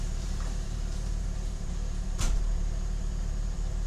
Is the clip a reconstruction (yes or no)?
yes